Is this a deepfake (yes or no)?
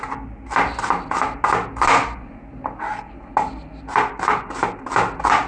no